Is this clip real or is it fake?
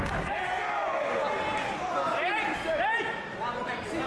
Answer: fake